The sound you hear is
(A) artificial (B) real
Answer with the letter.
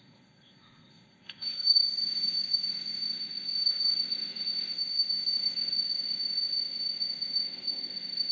A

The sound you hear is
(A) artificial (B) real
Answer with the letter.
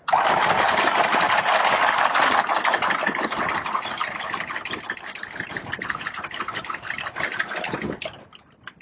A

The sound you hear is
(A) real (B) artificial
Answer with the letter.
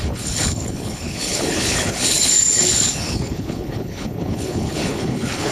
B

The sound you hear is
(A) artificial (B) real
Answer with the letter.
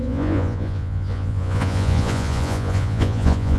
A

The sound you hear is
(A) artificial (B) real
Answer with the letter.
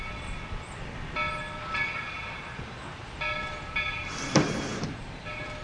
B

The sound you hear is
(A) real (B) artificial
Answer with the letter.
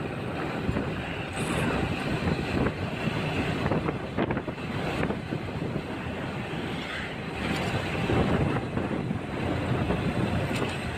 A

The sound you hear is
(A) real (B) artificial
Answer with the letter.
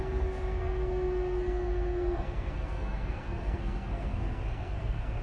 B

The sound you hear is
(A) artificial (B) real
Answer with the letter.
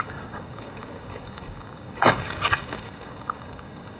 A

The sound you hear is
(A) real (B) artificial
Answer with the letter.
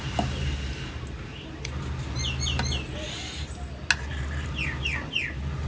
A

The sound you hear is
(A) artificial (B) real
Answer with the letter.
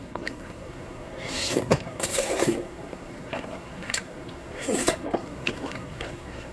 A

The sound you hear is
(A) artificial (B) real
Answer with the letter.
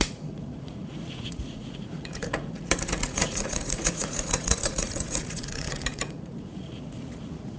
A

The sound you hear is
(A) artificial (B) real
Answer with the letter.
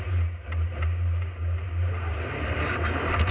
A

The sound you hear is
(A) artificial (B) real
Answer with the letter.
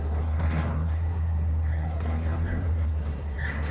A